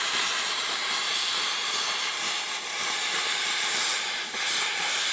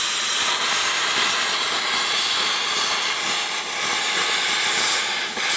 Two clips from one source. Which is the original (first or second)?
second